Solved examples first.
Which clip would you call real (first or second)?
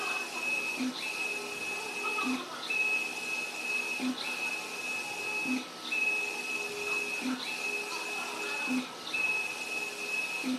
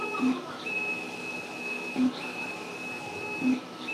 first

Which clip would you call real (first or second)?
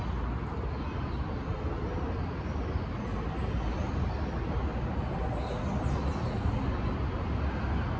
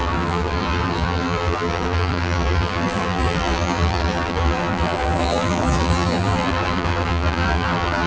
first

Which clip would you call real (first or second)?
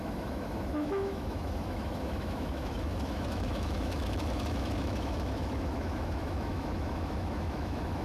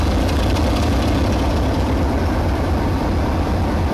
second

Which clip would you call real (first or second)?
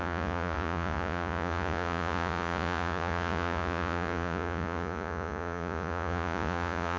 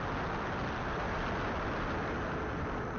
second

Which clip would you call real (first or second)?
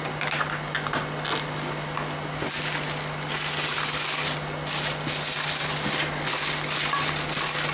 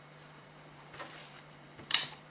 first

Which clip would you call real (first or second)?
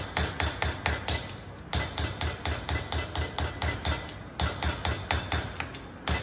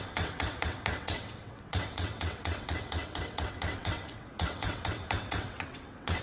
first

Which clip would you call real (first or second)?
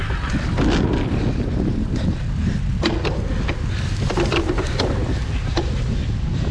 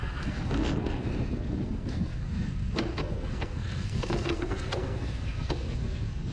first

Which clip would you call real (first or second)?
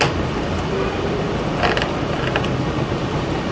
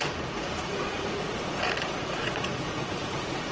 first